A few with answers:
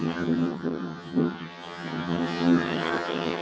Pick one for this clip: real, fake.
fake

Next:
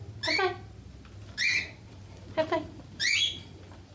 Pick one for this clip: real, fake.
real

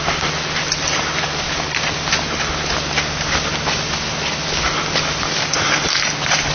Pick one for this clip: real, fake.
real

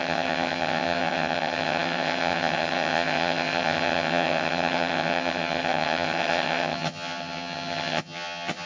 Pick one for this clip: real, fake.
fake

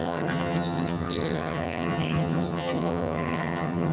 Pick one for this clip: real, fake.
fake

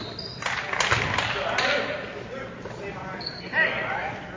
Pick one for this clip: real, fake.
real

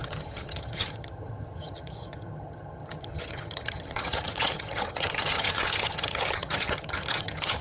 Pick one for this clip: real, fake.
fake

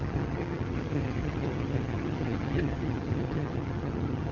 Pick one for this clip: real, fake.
fake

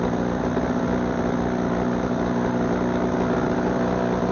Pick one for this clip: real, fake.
real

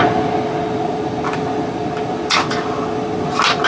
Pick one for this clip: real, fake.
real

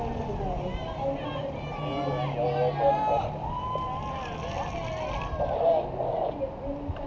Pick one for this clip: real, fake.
real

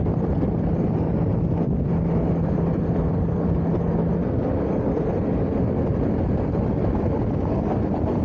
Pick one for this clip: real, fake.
real